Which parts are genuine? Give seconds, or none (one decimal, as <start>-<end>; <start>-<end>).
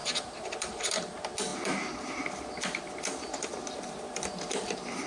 0.9-3.1